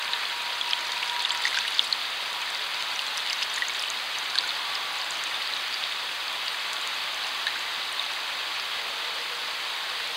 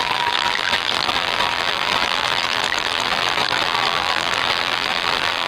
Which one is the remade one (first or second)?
second